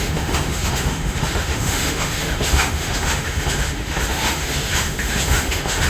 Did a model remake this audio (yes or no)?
yes